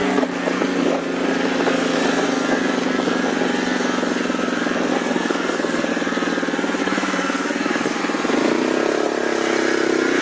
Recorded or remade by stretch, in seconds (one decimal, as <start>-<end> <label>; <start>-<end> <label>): 0.0-1.0 remade; 1.0-4.9 recorded; 4.9-5.9 remade; 5.9-6.8 recorded; 6.8-8.0 remade; 8.0-10.2 recorded